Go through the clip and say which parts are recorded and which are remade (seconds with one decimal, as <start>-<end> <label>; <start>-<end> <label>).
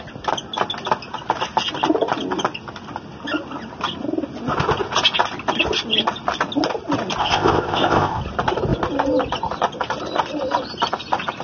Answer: 0.0-7.2 recorded; 7.2-8.2 remade; 8.2-11.4 recorded